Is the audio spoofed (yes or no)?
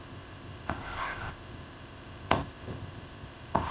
yes